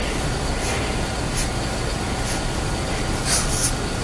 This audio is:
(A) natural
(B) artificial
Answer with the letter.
A